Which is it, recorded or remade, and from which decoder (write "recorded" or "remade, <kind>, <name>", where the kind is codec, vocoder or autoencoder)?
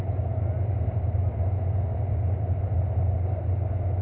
recorded